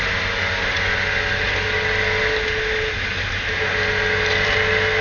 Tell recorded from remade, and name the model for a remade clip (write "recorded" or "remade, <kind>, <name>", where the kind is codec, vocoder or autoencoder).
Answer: recorded